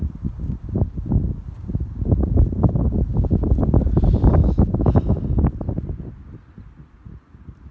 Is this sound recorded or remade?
recorded